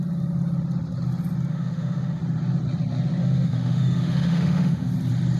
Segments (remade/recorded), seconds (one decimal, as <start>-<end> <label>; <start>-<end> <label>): 0.0-1.5 recorded; 1.5-2.2 remade; 2.2-3.2 recorded; 3.2-4.9 remade; 4.9-5.4 recorded

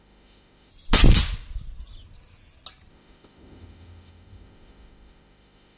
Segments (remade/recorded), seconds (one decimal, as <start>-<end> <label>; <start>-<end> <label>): 0.0-0.7 remade; 0.7-2.9 recorded; 2.9-5.8 remade

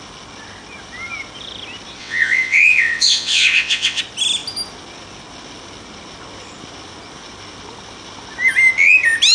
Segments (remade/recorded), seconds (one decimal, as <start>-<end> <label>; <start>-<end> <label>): 0.0-2.0 recorded; 2.0-4.0 remade; 4.0-9.3 recorded

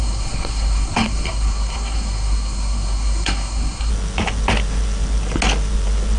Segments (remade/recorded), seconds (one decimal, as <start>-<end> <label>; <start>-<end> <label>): 0.0-3.9 remade; 3.9-6.2 recorded

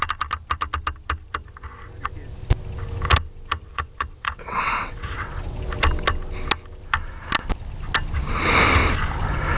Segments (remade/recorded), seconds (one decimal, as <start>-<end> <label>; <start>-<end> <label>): 0.0-3.7 recorded; 3.7-5.6 remade; 5.6-9.6 recorded

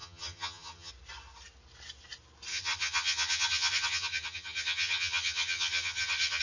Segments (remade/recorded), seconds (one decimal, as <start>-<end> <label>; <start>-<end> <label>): 0.0-0.9 remade; 0.9-2.5 recorded; 2.5-6.4 remade

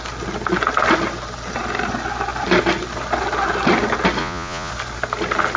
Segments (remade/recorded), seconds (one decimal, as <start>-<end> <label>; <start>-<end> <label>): 0.0-4.2 recorded; 4.2-4.7 remade; 4.7-5.6 recorded

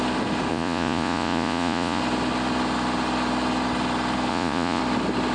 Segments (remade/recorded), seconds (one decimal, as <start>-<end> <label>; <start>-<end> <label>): 0.0-0.5 recorded; 0.5-2.0 remade; 2.0-4.3 recorded; 4.3-4.8 remade; 4.8-5.3 recorded